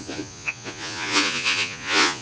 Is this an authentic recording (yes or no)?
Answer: no